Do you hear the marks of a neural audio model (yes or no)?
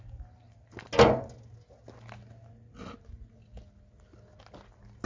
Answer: no